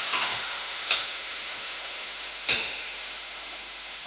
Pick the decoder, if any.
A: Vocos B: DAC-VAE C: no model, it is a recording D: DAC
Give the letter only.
B